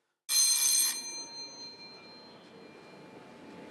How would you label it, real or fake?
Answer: real